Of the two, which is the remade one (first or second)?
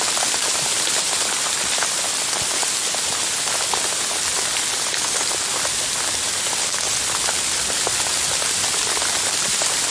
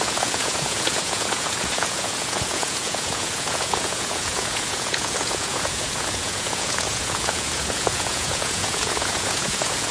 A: second